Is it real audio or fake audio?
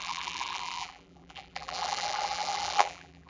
fake